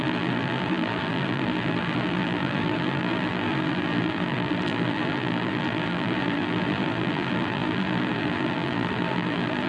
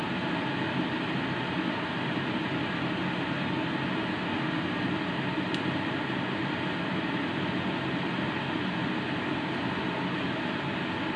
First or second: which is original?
second